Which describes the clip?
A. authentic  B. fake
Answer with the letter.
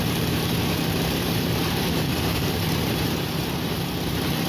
B